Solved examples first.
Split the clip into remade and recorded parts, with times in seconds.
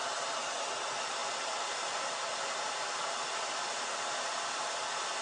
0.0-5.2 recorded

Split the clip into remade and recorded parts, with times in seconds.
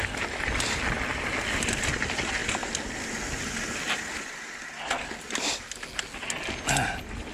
0.0-7.3 recorded